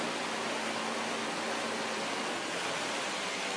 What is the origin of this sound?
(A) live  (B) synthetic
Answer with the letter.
A